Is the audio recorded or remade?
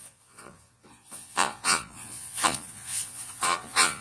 remade